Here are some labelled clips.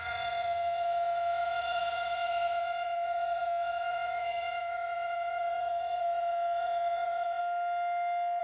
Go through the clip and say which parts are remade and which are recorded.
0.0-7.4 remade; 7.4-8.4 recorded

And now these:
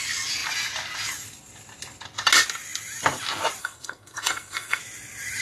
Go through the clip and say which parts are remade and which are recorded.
0.0-3.6 recorded; 3.6-4.8 remade; 4.8-5.4 recorded